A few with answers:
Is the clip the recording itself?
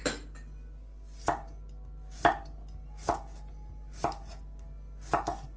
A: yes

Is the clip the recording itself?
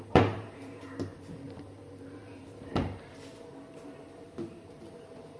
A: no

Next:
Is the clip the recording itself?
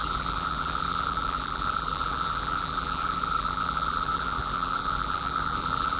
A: no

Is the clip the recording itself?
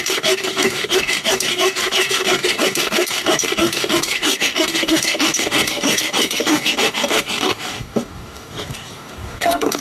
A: no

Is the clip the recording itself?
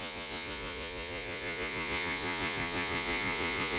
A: no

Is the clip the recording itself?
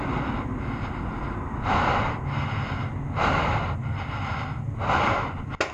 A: yes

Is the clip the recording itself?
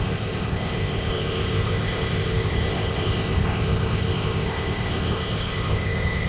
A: no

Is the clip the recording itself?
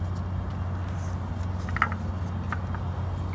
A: yes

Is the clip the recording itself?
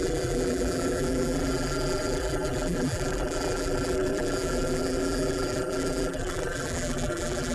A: no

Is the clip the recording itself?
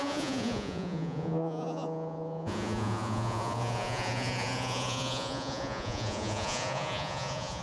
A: no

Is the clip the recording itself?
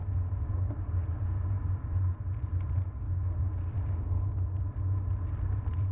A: yes